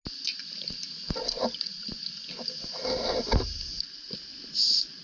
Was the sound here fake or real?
real